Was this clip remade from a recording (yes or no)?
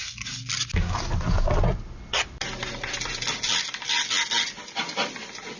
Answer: no